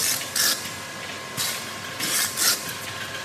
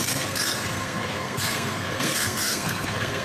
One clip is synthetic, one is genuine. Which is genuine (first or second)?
first